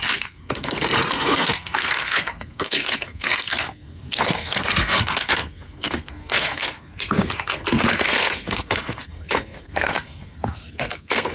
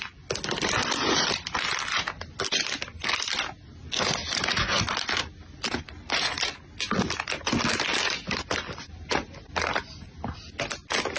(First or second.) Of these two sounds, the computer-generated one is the first